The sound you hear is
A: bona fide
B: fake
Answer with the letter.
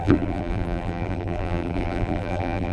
B